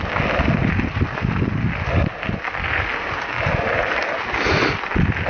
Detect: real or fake real